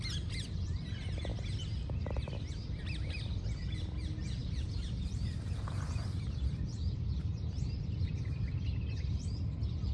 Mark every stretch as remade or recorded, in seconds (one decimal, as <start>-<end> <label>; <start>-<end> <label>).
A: 0.0-4.4 recorded; 4.4-8.8 remade; 8.8-9.9 recorded